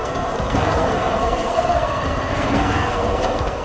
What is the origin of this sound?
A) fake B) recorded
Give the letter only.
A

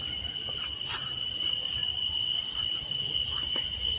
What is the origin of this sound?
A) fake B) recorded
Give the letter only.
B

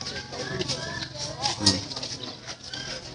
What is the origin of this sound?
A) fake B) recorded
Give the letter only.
B